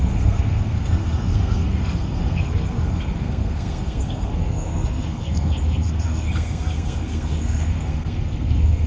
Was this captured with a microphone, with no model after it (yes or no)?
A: no